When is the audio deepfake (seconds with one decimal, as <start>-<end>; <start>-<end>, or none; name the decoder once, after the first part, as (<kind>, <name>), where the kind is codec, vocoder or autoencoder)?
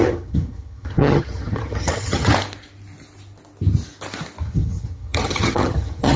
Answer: 0.0-2.3 (vocoder, HiFi-GAN); 4.4-6.2